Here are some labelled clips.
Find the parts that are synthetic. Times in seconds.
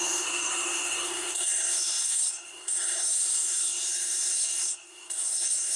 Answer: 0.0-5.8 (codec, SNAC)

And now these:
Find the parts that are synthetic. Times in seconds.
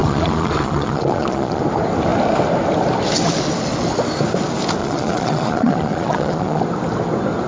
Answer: 0.0-1.6 (vocoder, Vocos); 4.8-6.6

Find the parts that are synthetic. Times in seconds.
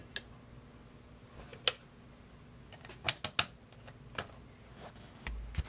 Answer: none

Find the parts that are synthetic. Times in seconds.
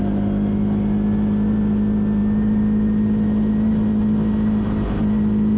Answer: none